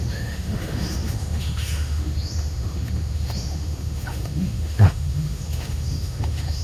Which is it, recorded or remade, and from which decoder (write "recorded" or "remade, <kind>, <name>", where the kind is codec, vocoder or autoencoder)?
remade, autoencoder, DAC-VAE